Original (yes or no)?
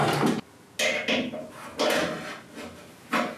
yes